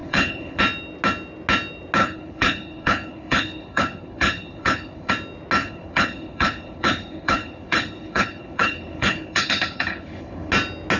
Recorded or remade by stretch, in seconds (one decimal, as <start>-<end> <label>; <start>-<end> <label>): 0.0-0.6 remade; 0.6-2.0 recorded; 2.0-5.1 remade; 5.1-5.6 recorded; 5.6-10.5 remade; 10.5-11.0 recorded